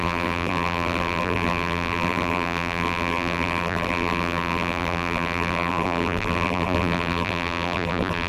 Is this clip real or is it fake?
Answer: fake